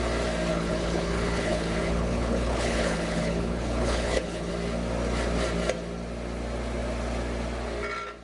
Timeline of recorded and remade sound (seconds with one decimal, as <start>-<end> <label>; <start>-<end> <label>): 0.0-0.5 recorded; 0.5-4.5 remade; 4.5-8.2 recorded